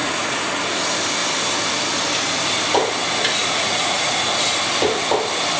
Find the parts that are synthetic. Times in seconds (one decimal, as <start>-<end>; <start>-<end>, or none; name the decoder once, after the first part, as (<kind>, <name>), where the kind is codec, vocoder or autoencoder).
0.0-0.6 (vocoder, Vocos); 3.4-4.4